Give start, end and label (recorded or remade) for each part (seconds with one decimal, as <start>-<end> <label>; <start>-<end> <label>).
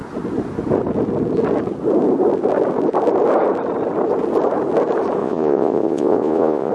0.0-5.2 recorded; 5.2-6.7 remade